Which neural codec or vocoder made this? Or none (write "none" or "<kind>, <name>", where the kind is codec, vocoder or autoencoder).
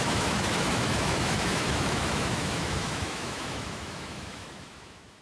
autoencoder, DAC-VAE